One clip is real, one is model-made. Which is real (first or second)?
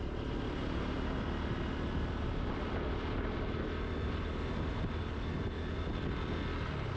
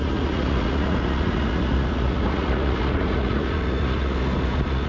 first